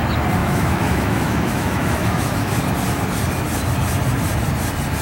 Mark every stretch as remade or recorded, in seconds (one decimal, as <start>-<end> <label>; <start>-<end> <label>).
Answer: 0.0-0.4 recorded; 0.4-2.6 remade; 2.6-5.0 recorded